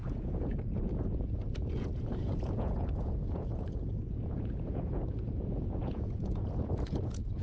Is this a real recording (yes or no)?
no